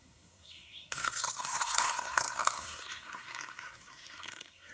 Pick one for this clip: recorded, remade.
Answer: remade